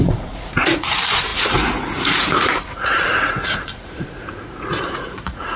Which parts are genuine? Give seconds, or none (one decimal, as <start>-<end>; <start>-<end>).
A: none